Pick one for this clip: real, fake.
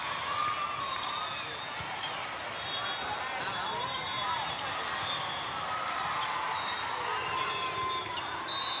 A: real